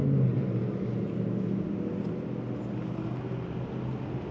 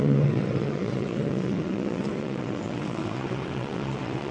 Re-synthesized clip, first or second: second